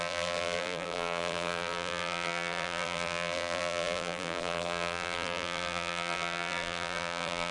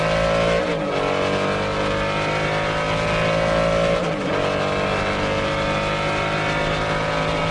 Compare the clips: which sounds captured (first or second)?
second